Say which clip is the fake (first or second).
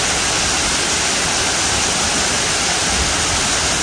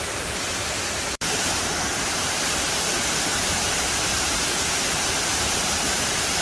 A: second